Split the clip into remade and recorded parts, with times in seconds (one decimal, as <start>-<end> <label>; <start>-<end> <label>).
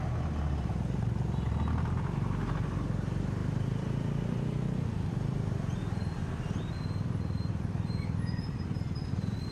0.0-9.5 recorded